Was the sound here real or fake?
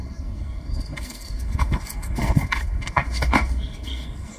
fake